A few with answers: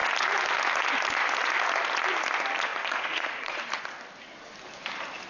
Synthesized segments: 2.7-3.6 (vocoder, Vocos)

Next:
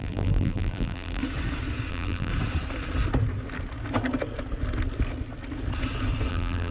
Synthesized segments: 0.0-1.2 (vocoder, BigVGAN v2); 1.9-2.3; 6.3-6.7

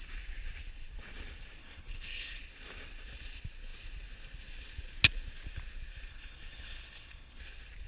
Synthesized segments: 1.6-2.4 (codec, HILCodec); 6.1-7.4

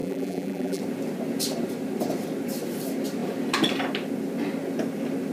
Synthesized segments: 0.0-0.8 (vocoder, BigVGAN v2)

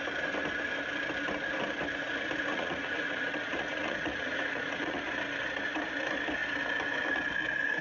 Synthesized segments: 2.5-5.0 (vocoder, Vocos)

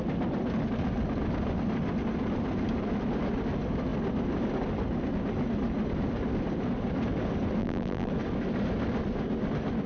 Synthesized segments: 7.6-8.1 (vocoder, BigVGAN v2)

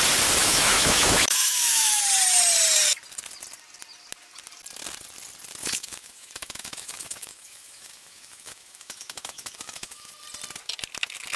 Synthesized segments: 0.4-2.0 (autoencoder, DAC-VAE); 5.6-10.1